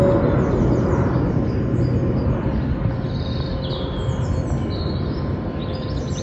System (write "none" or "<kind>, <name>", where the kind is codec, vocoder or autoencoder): none